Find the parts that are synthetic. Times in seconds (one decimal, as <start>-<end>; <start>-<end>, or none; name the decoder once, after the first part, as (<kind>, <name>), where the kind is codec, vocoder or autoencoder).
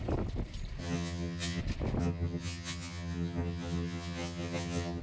0.8-1.6 (vocoder, HiFi-GAN); 2.0-5.0